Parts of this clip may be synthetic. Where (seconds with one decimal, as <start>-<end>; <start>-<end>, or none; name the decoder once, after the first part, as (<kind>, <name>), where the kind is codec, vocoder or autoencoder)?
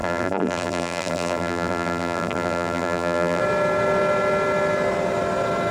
0.0-3.4 (vocoder, BigVGAN v2)